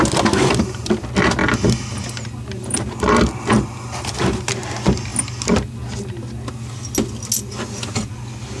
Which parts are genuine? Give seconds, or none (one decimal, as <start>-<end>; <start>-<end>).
0.0-8.6